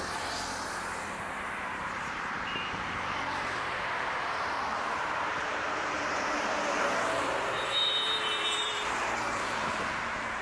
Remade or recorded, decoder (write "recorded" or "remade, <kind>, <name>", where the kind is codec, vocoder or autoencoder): remade, vocoder, BigVGAN v2